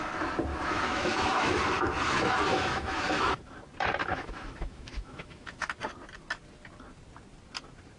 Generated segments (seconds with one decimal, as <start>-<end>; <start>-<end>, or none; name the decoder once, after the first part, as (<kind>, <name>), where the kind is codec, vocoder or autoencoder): 0.5-1.6 (autoencoder, DAC-VAE); 2.5-3.4; 4.0-5.7